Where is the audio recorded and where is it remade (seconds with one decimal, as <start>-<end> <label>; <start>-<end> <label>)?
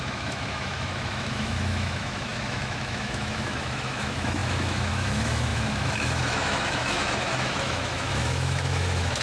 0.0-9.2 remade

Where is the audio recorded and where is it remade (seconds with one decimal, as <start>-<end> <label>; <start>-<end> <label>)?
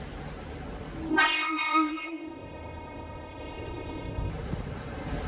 0.0-1.1 recorded; 1.1-4.3 remade; 4.3-5.3 recorded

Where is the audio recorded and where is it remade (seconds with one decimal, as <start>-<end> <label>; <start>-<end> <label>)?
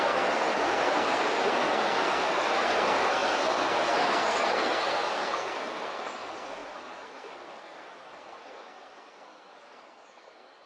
0.0-10.7 remade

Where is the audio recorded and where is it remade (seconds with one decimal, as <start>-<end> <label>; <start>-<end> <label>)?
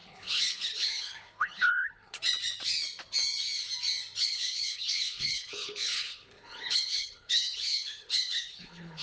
0.0-2.2 remade; 2.2-4.2 recorded; 4.2-9.0 remade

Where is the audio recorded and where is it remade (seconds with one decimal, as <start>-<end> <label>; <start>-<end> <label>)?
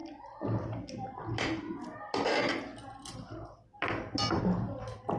0.0-5.2 recorded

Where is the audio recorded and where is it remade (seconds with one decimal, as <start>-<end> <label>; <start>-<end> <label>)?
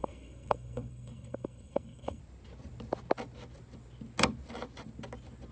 0.0-2.2 remade; 2.2-5.5 recorded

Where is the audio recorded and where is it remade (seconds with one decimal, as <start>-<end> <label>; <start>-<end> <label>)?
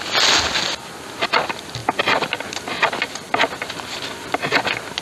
0.0-5.0 recorded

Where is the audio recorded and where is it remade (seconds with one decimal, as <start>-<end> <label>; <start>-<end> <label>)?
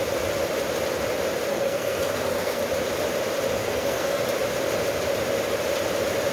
0.0-1.5 recorded; 1.5-2.6 remade; 2.6-3.6 recorded; 3.6-4.2 remade; 4.2-6.3 recorded